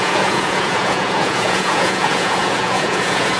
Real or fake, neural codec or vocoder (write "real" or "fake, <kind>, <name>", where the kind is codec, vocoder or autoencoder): fake, vocoder, Vocos